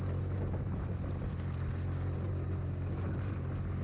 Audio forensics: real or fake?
real